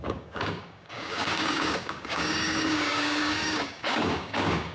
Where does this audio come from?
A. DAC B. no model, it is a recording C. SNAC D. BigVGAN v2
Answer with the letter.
A